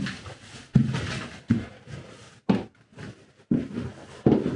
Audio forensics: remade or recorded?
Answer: recorded